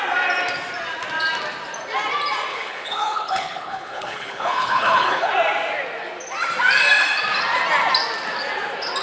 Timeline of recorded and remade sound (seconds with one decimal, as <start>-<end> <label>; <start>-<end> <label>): 0.0-2.5 recorded; 2.5-5.3 remade; 5.3-9.0 recorded